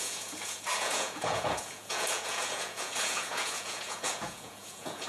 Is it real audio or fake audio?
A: fake